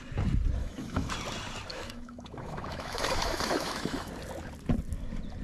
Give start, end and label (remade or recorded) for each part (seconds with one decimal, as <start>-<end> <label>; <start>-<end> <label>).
0.0-0.6 recorded; 0.6-1.1 remade; 1.1-1.7 recorded; 1.7-4.1 remade; 4.1-5.4 recorded